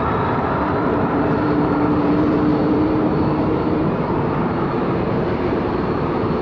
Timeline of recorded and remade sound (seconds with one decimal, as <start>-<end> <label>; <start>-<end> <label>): 0.0-6.4 remade